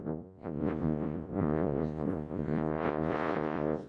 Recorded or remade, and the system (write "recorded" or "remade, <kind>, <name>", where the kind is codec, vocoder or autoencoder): remade, vocoder, Vocos